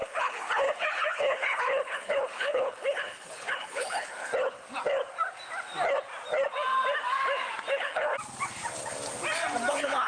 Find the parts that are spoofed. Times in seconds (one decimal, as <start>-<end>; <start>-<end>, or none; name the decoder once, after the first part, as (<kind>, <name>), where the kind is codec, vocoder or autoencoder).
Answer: 0.0-4.3 (codec, HILCodec); 7.7-8.1; 9.7-10.1